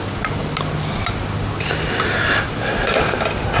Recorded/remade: recorded